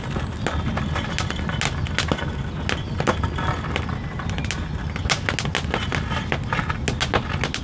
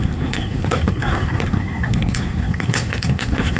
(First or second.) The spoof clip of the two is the second